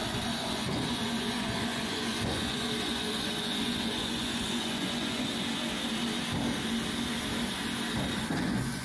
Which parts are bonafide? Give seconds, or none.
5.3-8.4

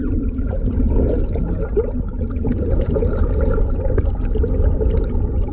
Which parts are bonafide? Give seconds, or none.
0.0-5.5

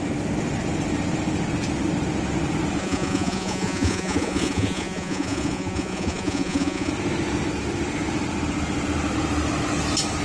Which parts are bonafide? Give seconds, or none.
0.0-2.8; 6.9-10.2

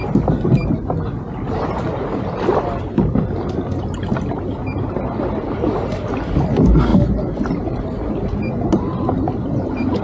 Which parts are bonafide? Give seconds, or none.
0.0-10.0

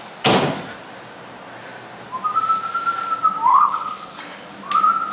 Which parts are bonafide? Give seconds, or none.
0.0-3.5; 4.2-5.1

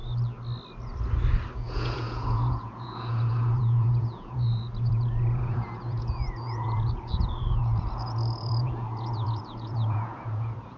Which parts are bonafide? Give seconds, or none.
0.0-1.5